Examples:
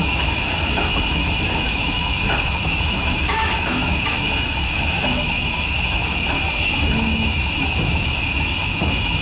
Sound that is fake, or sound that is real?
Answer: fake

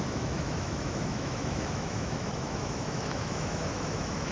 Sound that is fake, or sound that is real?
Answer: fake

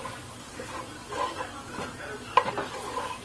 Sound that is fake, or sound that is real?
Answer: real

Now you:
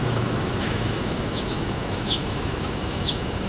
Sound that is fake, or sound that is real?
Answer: fake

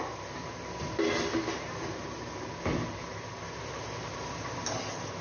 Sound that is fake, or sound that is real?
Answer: real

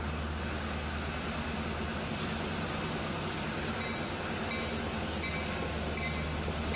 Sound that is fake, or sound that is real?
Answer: real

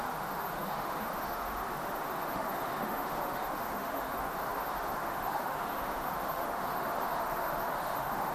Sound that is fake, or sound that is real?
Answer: fake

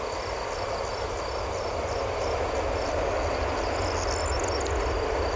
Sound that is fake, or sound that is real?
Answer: real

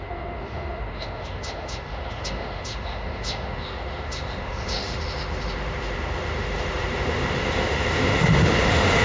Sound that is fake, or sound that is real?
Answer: fake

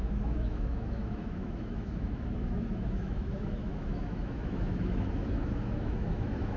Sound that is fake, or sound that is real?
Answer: fake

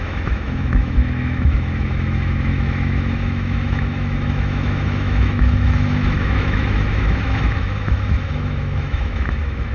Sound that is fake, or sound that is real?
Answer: fake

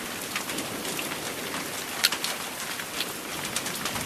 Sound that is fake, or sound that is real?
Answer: real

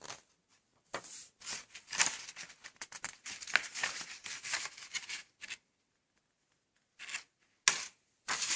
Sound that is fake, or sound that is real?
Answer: real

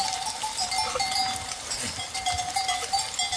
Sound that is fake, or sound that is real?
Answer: real